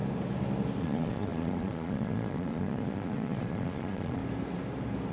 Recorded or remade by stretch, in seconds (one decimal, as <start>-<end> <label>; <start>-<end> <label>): 0.0-0.8 recorded; 0.8-4.2 remade; 4.2-5.1 recorded